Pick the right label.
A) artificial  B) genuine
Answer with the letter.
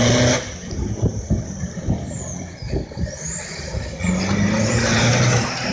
B